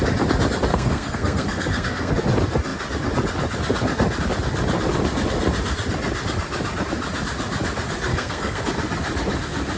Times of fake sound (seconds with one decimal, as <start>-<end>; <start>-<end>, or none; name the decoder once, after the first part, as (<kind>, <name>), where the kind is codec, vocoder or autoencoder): 0.7-2.1 (codec, SNAC); 8.1-8.6